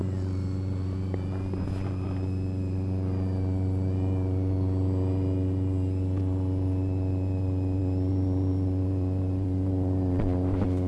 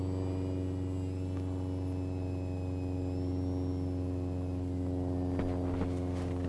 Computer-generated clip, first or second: first